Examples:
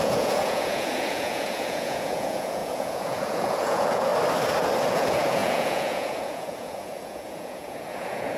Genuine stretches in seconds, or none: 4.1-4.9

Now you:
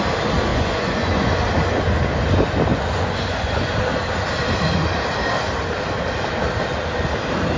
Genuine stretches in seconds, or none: 0.0-0.5; 1.3-2.7; 3.7-7.6

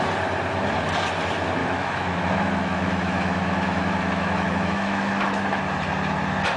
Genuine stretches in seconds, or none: 0.0-1.6; 5.6-6.6

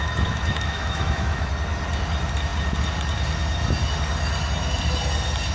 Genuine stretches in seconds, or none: 1.5-5.5

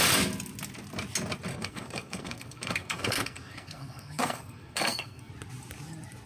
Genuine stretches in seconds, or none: 0.0-1.5; 5.3-6.3